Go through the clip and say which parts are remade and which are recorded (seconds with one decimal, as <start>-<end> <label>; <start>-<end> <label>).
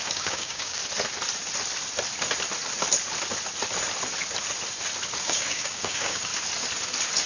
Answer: 0.0-0.8 remade; 0.8-5.2 recorded; 5.2-6.3 remade; 6.3-7.3 recorded